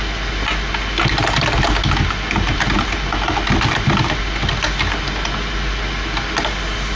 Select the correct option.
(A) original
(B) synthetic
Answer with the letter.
A